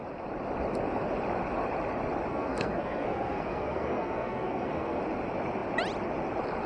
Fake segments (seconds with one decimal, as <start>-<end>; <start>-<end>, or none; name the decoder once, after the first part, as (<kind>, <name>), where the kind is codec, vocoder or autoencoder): 2.3-5.0 (codec, SNAC)